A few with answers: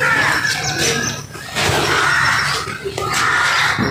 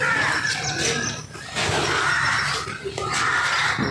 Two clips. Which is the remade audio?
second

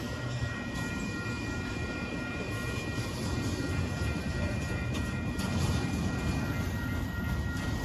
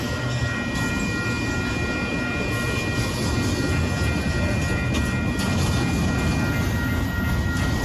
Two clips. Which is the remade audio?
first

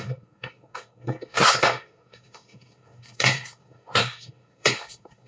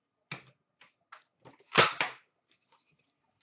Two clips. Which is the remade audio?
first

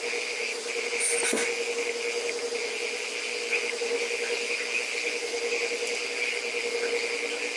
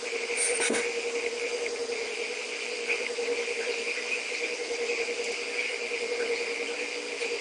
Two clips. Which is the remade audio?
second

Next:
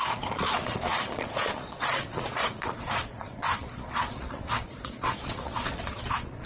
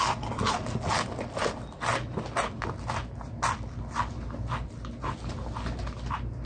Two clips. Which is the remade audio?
first